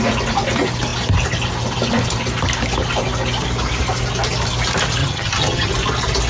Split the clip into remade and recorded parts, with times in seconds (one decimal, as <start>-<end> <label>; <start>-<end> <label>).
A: 0.0-5.0 recorded; 5.0-5.7 remade; 5.7-6.3 recorded